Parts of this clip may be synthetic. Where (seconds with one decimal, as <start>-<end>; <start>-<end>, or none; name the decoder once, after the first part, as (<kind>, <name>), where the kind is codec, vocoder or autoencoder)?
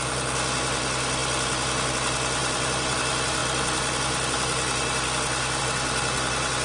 2.4-3.0 (vocoder, BigVGAN v2)